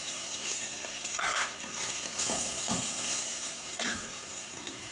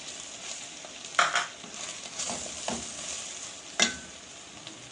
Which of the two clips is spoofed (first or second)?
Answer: first